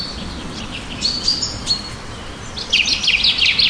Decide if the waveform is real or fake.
real